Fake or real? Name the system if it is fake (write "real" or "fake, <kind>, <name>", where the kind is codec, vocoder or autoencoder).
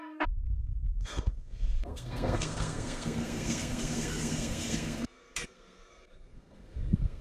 fake, codec, SNAC